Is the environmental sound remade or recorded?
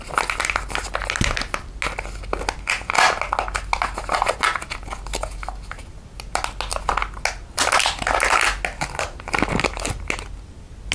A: recorded